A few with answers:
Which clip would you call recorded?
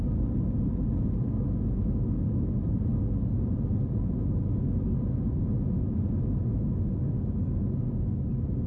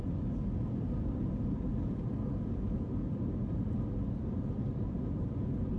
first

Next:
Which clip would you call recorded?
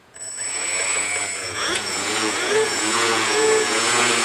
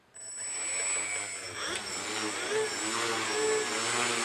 second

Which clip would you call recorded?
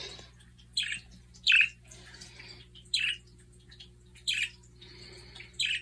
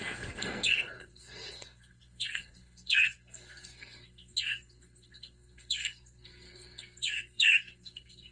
first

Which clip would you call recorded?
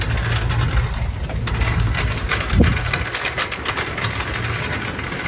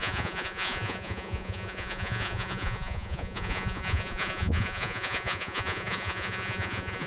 first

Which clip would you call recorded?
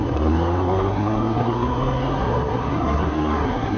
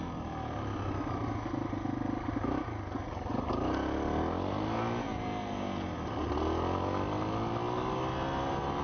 second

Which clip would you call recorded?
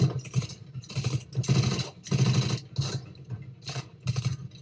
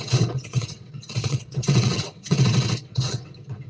first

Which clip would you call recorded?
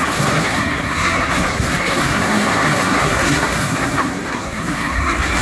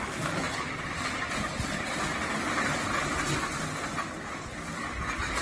second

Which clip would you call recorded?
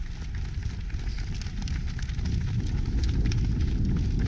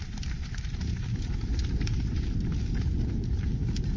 first